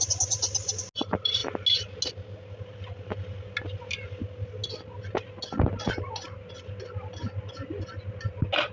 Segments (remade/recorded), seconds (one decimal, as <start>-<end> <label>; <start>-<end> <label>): 0.0-8.7 recorded